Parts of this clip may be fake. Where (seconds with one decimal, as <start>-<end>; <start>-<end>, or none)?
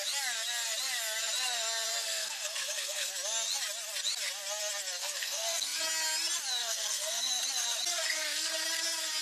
1.9-3.1; 5.0-5.8; 6.6-7.3; 7.9-8.5